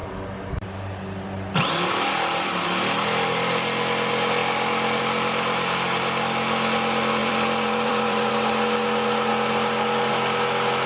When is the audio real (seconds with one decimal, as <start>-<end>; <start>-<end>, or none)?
2.1-7.2; 8.3-10.9